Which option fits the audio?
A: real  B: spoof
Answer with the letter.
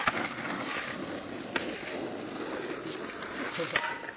A